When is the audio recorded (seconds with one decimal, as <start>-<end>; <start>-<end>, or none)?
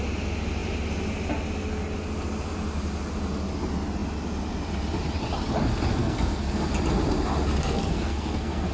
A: 0.0-6.0; 6.7-7.6